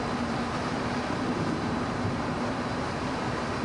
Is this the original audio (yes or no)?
no